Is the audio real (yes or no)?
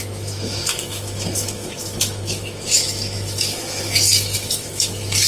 no